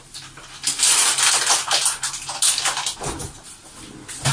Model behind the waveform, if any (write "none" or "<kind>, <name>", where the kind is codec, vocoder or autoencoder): none